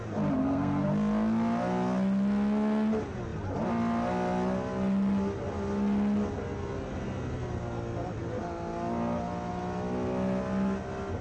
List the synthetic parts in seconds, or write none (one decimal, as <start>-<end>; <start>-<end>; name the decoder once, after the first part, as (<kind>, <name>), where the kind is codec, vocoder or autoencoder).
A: 0.4-0.9 (codec, SNAC)